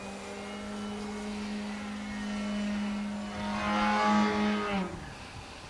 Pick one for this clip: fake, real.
real